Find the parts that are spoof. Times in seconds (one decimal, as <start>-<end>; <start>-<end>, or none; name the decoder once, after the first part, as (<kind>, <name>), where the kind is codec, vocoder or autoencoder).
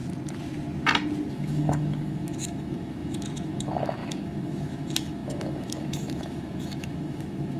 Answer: 1.3-7.6 (autoencoder, DAC-VAE)